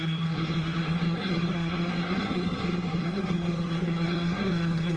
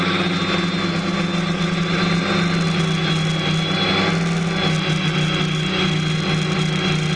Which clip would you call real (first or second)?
second